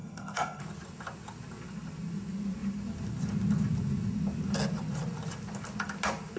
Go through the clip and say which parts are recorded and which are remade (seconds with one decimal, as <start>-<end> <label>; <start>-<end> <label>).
0.0-0.6 remade; 0.6-6.4 recorded